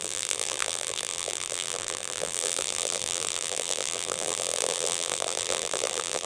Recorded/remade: remade